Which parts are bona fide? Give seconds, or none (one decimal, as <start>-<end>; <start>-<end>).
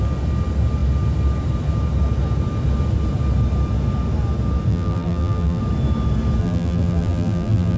0.0-4.7; 5.6-6.4